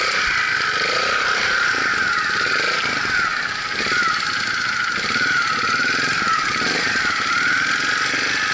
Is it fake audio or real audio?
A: real